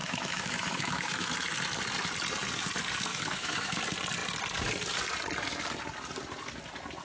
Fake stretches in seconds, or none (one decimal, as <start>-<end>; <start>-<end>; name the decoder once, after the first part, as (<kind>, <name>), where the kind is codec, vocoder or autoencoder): 0.0-1.3 (autoencoder, DAC-VAE); 3.1-3.8